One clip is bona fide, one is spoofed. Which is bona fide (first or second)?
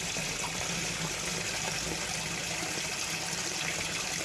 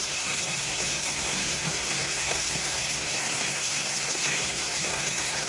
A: first